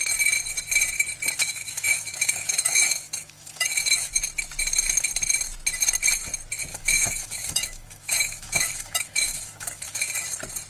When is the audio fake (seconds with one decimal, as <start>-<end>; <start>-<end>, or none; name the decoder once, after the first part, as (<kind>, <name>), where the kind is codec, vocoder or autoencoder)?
1.4-4.2 (autoencoder, DAC-VAE); 6.7-10.0